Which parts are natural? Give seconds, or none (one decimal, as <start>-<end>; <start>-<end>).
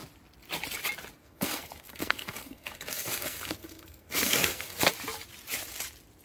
0.0-1.2; 4.9-6.2